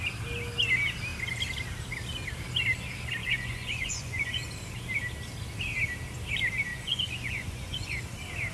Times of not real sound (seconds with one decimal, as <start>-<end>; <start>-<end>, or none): 3.2-4.3; 6.7-8.0